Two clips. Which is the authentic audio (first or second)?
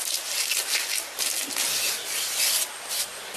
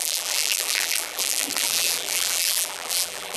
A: first